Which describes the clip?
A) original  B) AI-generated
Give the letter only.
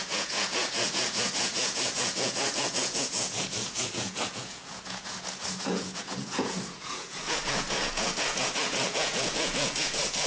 B